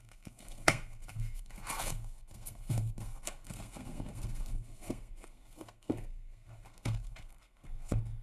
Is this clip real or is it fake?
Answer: fake